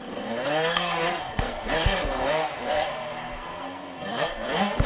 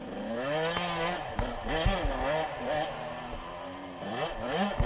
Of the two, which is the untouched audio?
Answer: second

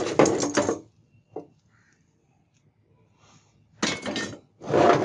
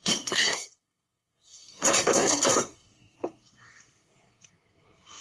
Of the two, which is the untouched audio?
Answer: first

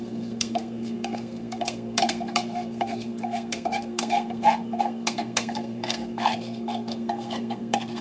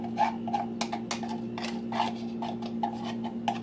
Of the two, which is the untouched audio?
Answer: second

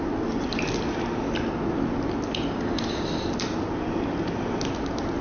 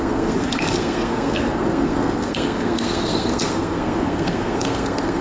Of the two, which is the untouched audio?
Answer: first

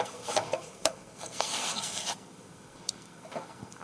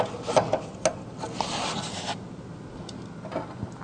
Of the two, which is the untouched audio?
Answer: second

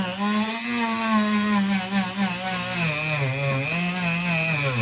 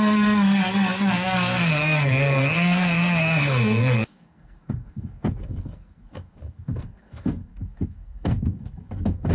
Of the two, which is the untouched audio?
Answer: first